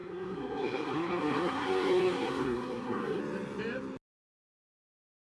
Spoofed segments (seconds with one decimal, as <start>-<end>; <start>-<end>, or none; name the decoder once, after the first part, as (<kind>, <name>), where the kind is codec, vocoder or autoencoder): 0.0-3.2 (codec, SNAC)